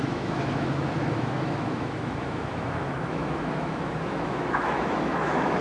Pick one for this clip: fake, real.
fake